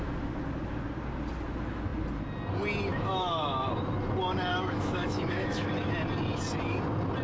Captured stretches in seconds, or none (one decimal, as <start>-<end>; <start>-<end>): 0.0-2.9; 3.7-4.5; 5.7-7.2

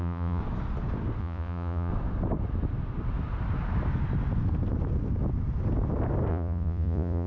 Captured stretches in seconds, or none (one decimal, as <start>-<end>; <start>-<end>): 0.4-1.2; 1.9-6.3

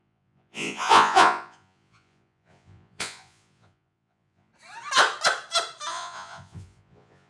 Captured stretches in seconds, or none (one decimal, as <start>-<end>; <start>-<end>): 4.5-5.9

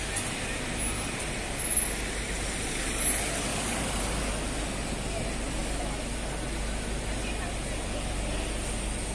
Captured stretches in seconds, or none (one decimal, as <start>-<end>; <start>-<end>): 0.0-3.5; 4.2-9.1

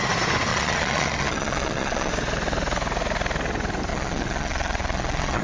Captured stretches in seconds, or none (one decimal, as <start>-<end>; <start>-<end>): 0.0-0.5; 2.1-3.9

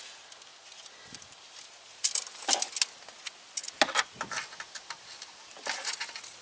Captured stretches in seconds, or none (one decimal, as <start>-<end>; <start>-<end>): 0.0-6.4

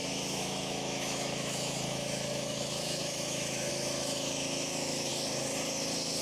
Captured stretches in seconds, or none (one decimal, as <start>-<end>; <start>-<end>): 5.1-6.2